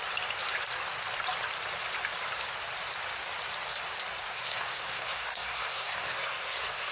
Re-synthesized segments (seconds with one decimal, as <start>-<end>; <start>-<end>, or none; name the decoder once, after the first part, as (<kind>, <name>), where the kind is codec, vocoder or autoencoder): 4.2-6.9 (codec, SNAC)